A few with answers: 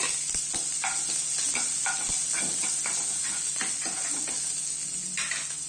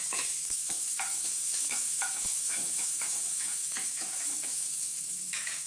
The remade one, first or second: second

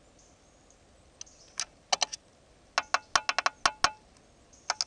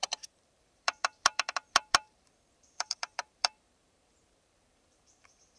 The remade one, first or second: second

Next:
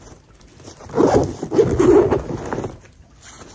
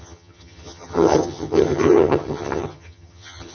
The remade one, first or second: second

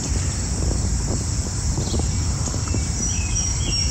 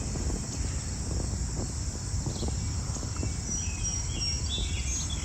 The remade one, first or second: first